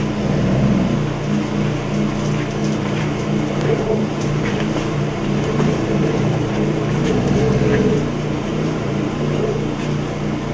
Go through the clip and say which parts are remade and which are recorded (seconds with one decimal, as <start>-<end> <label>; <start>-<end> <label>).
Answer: 0.0-2.6 recorded; 2.6-7.4 remade; 7.4-8.5 recorded; 8.5-9.2 remade; 9.2-10.5 recorded